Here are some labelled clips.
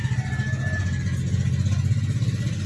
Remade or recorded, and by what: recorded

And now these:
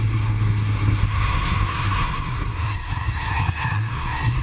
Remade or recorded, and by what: remade, codec, SNAC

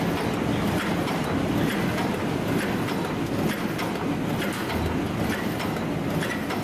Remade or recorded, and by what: recorded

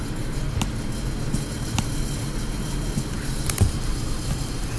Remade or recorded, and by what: recorded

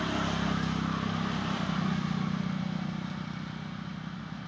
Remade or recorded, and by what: recorded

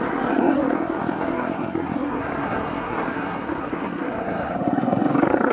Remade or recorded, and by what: remade, codec, SNAC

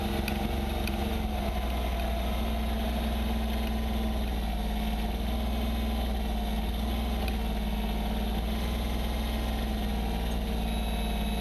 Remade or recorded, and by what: recorded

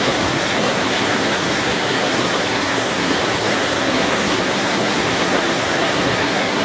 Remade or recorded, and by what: remade, codec, SNAC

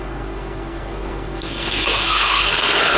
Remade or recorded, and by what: remade, codec, SNAC